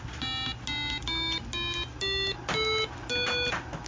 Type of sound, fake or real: real